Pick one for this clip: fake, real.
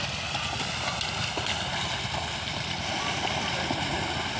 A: real